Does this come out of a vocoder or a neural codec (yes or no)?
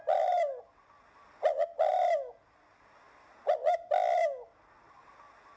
no